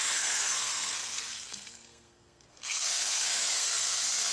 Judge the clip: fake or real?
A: fake